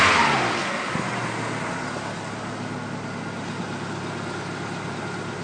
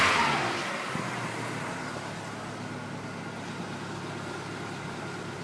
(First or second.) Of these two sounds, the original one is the first